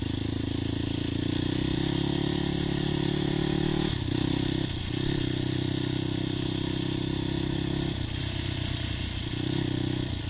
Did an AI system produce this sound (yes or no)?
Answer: no